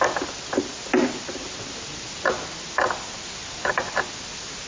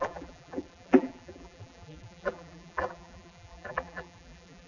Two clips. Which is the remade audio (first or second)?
second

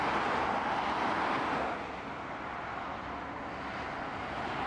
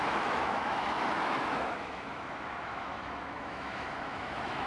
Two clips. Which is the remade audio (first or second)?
second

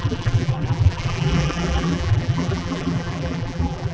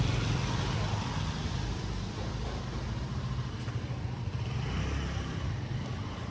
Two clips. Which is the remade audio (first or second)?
first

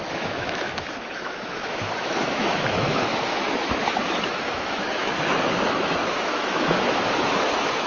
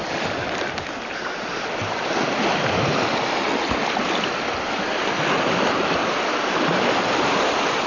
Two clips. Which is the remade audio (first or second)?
first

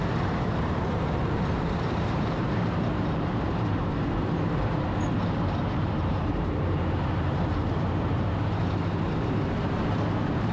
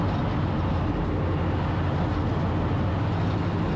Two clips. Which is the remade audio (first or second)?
first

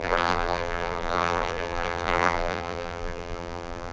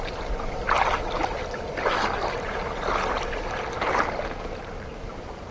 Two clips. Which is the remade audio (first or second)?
first